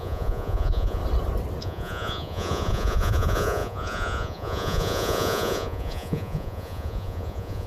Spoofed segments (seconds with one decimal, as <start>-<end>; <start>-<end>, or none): 0.0-1.0; 1.6-7.7